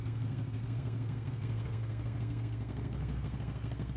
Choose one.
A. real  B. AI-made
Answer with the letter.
B